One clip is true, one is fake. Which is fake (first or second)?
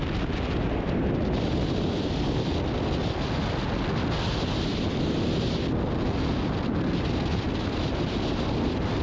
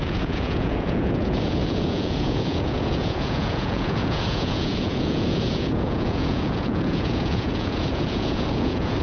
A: second